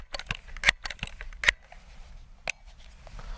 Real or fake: real